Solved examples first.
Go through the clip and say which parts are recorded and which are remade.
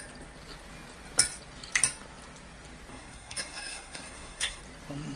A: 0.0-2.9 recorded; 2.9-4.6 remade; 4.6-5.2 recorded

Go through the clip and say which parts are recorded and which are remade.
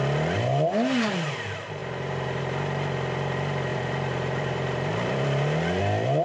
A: 0.0-1.8 recorded; 1.8-2.4 remade; 2.4-3.7 recorded; 3.7-5.8 remade; 5.8-6.2 recorded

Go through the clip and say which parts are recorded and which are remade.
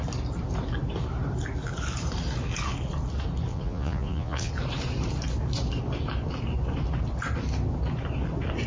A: 0.0-3.5 recorded; 3.5-4.5 remade; 4.5-8.7 recorded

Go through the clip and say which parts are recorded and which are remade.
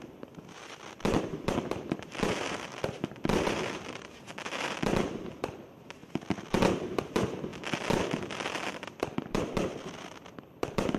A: 0.0-6.0 remade; 6.0-7.0 recorded; 7.0-11.0 remade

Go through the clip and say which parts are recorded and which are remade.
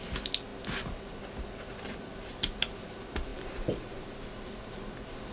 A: 0.0-5.3 recorded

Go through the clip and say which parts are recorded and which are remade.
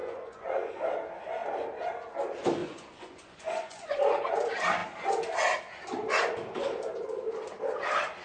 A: 0.0-0.7 remade; 0.7-2.6 recorded; 2.6-4.3 remade; 4.3-8.2 recorded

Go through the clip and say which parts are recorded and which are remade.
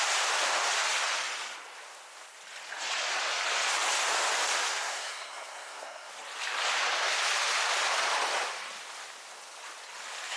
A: 0.0-4.7 recorded; 4.7-6.1 remade; 6.1-10.4 recorded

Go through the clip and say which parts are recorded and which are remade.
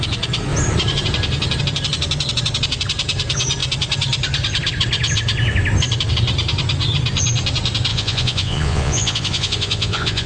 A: 0.0-7.9 recorded; 7.9-10.3 remade